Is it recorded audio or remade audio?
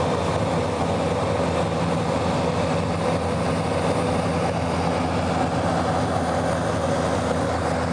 recorded